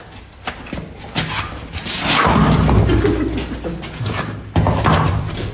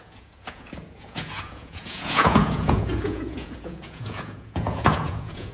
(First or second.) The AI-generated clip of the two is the second